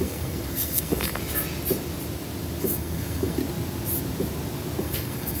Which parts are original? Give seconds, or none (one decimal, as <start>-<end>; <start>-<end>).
1.2-2.6; 3.4-4.8